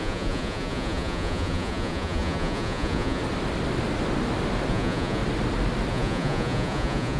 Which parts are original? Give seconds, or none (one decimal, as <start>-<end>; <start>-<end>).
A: 3.2-4.7; 5.2-5.9